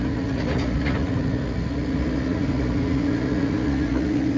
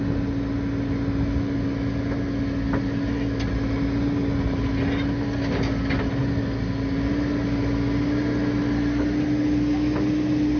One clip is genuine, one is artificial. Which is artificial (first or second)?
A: first